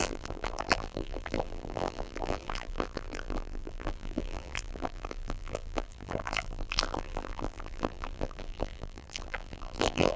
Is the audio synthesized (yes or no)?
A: yes